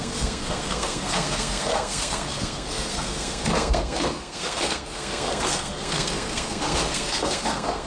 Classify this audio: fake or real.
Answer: fake